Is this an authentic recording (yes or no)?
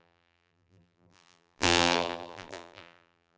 no